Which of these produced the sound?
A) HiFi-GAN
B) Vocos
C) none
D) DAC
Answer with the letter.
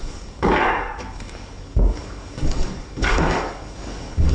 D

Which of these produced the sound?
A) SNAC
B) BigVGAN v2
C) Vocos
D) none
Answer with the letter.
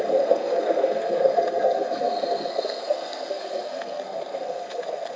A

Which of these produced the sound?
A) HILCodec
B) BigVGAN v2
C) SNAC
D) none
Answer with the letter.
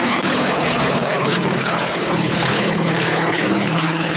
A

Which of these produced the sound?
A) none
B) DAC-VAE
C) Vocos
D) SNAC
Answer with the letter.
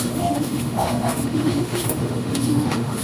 B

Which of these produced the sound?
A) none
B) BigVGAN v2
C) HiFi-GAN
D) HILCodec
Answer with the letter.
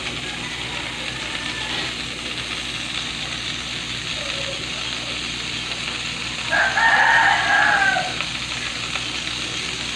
A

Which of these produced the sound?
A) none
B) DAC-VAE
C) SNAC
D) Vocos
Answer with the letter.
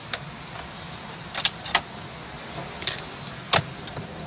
A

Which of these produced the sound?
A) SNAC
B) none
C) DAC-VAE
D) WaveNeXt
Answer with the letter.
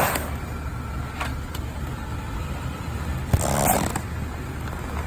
B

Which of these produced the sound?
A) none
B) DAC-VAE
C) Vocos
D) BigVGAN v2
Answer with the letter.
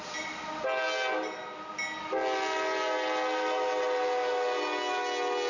A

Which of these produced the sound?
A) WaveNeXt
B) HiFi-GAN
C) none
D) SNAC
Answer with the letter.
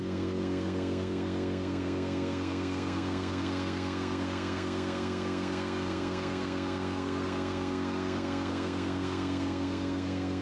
D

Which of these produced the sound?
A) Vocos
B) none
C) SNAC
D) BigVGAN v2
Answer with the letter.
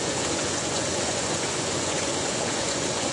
A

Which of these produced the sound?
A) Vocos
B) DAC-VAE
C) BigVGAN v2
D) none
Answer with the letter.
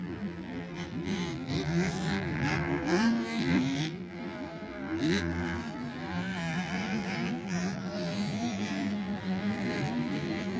C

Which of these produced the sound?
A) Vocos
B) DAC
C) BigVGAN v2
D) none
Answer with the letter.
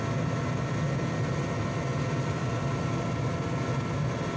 D